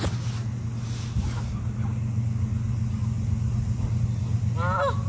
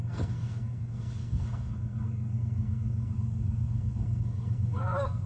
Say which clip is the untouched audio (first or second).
first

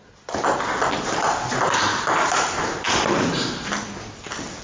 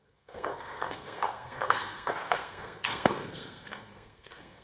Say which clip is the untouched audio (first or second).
first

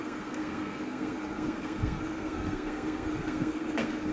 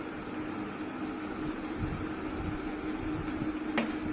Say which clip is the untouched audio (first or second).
second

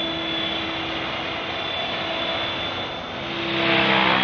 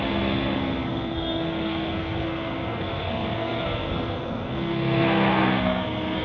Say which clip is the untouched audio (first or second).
first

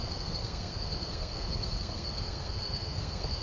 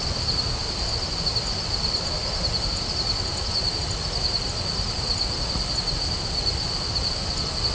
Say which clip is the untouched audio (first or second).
second